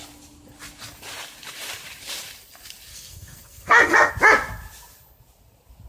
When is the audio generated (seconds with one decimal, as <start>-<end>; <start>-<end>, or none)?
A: 2.9-4.1